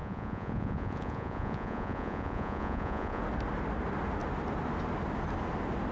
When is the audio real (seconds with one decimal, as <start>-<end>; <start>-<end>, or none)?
3.2-5.9